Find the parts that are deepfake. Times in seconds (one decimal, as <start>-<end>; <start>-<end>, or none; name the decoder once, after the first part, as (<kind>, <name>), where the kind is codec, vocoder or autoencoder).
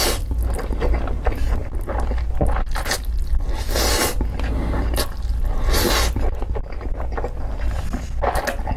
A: none